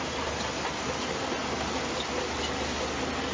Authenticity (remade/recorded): recorded